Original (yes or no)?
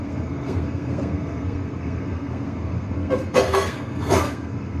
no